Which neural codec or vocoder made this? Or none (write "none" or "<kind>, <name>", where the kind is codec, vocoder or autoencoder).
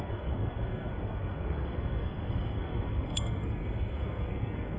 codec, SNAC